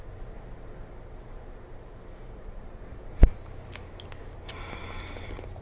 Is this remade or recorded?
recorded